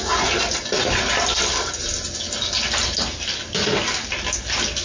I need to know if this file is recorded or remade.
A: recorded